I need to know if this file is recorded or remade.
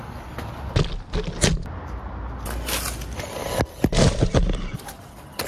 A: recorded